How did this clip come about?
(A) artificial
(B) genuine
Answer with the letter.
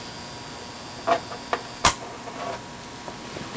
B